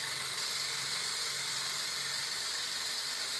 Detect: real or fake real